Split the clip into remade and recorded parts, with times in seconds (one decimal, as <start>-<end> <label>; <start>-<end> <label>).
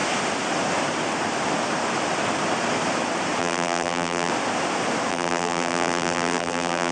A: 0.0-3.4 recorded; 3.4-4.3 remade; 4.3-5.1 recorded; 5.1-6.9 remade